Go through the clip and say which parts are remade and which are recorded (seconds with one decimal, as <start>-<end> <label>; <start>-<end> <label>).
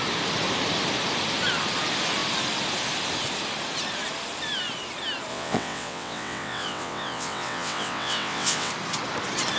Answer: 0.0-5.3 recorded; 5.3-8.7 remade; 8.7-9.6 recorded